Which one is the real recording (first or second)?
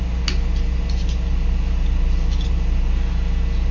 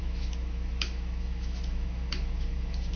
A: first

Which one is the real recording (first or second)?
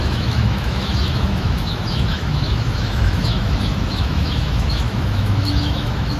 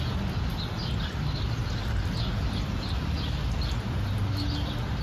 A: second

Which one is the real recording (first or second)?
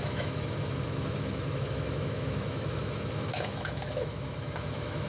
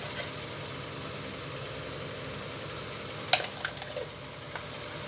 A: second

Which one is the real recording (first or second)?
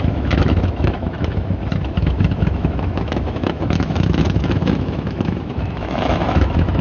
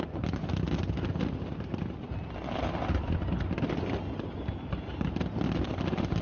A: second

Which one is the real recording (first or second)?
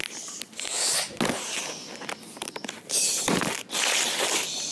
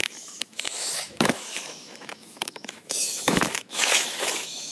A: first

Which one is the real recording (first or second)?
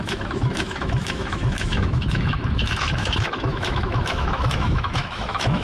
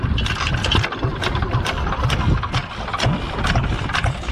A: second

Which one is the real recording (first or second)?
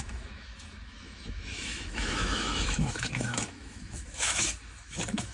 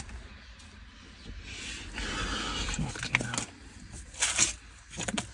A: second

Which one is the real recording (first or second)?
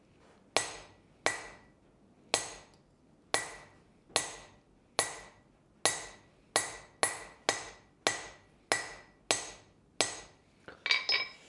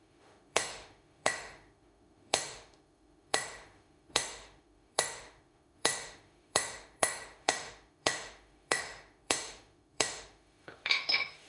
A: first